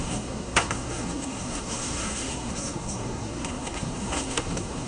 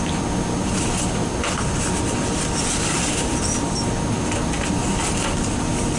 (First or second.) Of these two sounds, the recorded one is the second